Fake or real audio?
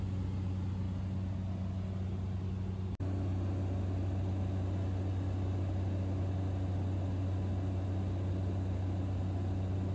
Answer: real